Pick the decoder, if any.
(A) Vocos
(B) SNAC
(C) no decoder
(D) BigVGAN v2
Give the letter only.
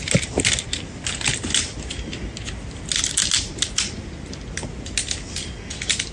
C